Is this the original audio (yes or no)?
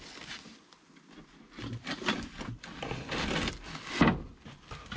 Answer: yes